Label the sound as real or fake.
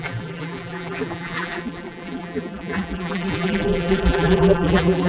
fake